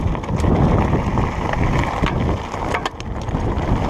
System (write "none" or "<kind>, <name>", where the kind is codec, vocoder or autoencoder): none